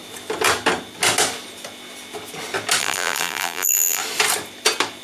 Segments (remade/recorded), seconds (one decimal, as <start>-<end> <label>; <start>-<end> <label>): 0.0-2.8 recorded; 2.8-4.0 remade; 4.0-5.0 recorded

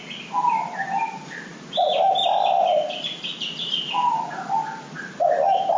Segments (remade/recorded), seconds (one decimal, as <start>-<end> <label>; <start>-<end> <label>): 0.0-5.8 recorded

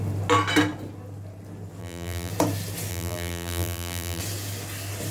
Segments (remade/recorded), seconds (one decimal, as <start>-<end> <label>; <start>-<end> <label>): 0.0-1.8 recorded; 1.8-2.3 remade; 2.3-2.9 recorded; 2.9-4.2 remade; 4.2-5.1 recorded